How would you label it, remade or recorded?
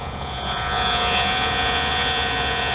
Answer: remade